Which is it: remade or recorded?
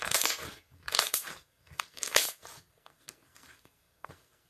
remade